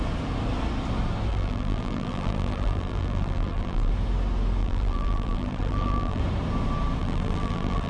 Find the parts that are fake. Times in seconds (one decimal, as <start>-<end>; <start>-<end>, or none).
1.3-3.9; 4.6-6.2; 7.0-7.9